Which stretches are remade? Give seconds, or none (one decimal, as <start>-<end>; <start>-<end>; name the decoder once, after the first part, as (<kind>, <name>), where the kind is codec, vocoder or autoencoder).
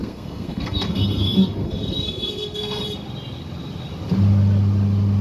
0.0-2.8 (codec, SNAC)